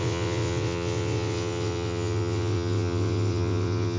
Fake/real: fake